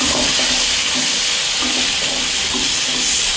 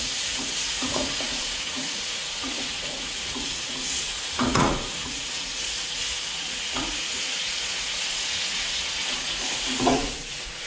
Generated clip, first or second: second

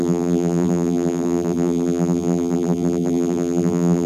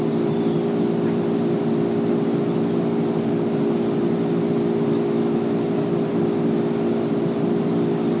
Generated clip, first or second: first